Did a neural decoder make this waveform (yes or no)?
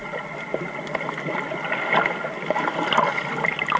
no